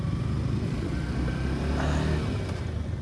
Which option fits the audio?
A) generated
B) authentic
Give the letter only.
B